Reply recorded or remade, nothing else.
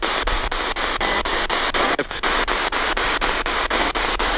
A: recorded